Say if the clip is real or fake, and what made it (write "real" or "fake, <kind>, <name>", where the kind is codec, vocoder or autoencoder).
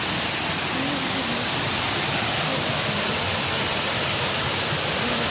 real